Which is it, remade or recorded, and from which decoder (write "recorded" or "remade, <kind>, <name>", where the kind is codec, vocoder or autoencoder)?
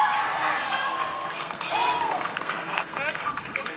remade, codec, SNAC